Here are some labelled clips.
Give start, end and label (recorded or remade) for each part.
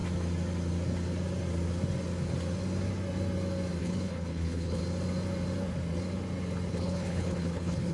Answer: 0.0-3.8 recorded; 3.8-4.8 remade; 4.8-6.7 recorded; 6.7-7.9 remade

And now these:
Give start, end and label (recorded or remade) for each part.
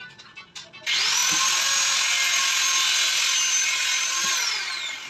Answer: 0.0-5.1 recorded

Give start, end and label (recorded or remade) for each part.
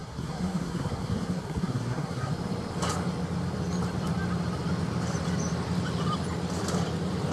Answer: 0.0-2.3 remade; 2.3-7.3 recorded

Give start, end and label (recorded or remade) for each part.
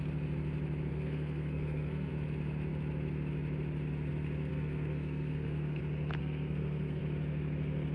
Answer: 0.0-0.9 recorded; 0.9-2.1 remade; 2.1-4.5 recorded; 4.5-5.8 remade; 5.8-6.2 recorded; 6.2-7.0 remade; 7.0-7.9 recorded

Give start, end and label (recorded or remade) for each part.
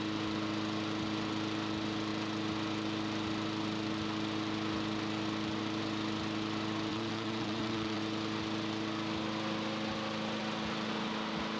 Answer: 0.0-6.9 recorded; 6.9-8.0 remade; 8.0-11.6 recorded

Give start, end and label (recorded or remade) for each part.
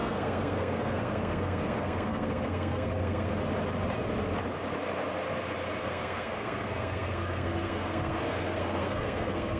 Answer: 0.0-3.3 remade; 3.3-5.8 recorded; 5.8-9.6 remade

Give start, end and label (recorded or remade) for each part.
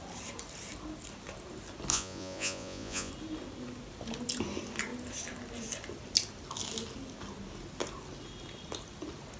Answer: 0.0-1.9 recorded; 1.9-3.1 remade; 3.1-9.4 recorded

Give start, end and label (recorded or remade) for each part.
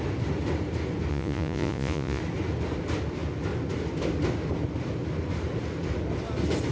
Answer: 0.0-1.1 recorded; 1.1-2.2 remade; 2.2-6.7 recorded